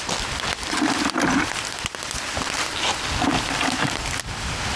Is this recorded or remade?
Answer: recorded